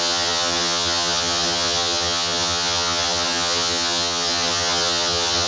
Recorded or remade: remade